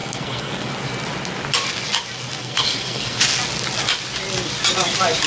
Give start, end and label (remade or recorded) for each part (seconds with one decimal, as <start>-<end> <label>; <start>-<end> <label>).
0.0-0.7 remade; 0.7-2.4 recorded; 2.4-3.2 remade; 3.2-5.3 recorded